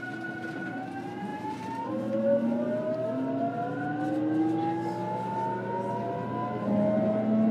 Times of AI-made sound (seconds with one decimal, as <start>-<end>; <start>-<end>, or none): none